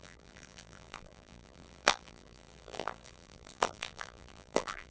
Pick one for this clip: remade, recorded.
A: remade